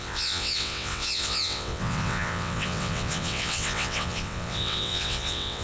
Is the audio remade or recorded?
remade